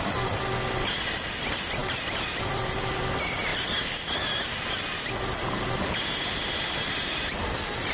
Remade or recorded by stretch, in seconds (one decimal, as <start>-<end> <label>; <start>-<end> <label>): 0.0-7.9 recorded